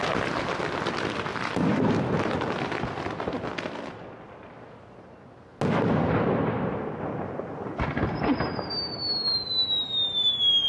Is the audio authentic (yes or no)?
yes